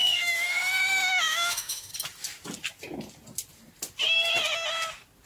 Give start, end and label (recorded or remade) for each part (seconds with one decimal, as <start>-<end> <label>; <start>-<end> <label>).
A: 0.0-1.9 remade; 1.9-5.3 recorded